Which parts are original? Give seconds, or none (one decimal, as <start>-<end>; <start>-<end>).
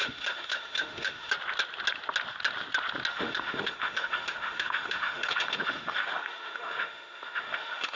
1.3-3.1